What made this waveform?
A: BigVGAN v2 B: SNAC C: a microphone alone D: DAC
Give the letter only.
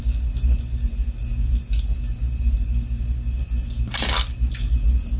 C